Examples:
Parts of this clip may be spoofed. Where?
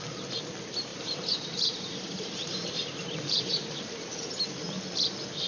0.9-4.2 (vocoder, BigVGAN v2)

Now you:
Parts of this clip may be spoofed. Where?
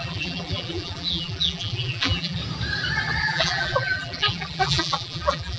0.0-2.4 (vocoder, BigVGAN v2); 3.2-5.6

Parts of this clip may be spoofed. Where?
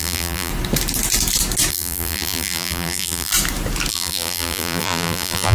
0.0-0.5 (vocoder, BigVGAN v2); 1.7-3.3; 3.9-5.5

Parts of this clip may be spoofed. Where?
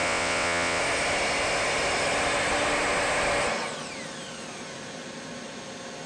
0.0-0.8 (vocoder, WaveNeXt)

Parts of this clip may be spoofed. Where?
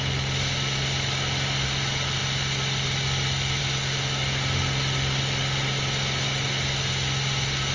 none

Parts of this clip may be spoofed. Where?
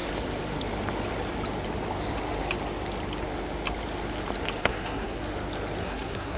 4.6-5.2 (codec, SNAC); 5.8-6.4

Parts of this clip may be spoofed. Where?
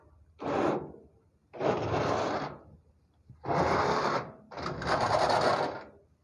1.4-5.1 (vocoder, BigVGAN v2)